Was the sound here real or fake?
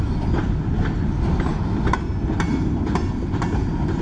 real